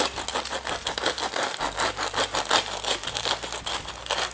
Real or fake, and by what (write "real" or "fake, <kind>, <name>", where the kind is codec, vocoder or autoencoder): real